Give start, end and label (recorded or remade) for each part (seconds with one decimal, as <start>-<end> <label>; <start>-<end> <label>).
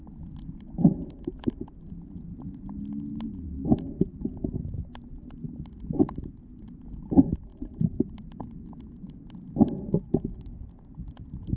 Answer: 0.0-11.6 recorded